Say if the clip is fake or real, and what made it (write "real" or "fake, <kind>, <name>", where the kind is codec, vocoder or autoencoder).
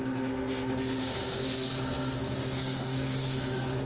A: fake, codec, SNAC